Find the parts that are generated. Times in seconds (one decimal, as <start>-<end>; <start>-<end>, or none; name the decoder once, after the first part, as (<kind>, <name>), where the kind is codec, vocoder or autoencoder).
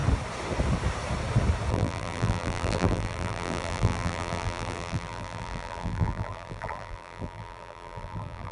1.7-8.5 (vocoder, BigVGAN v2)